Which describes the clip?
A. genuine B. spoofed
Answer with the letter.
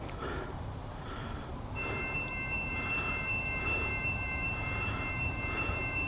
B